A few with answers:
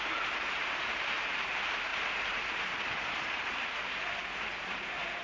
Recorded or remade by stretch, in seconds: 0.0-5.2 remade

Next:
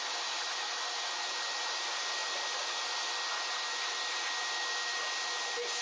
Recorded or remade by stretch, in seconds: 0.0-5.8 recorded